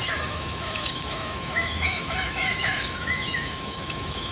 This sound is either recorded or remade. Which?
remade